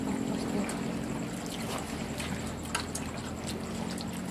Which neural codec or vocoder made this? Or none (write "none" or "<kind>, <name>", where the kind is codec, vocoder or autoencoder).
none